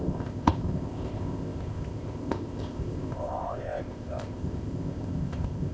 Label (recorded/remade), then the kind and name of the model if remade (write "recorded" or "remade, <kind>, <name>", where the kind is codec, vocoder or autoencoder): remade, codec, ZipCodec